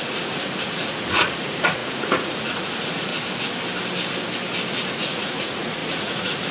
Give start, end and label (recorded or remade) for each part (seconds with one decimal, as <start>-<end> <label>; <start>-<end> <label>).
0.0-3.1 remade; 3.1-4.7 recorded; 4.7-6.5 remade